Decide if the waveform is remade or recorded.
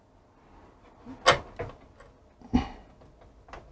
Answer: recorded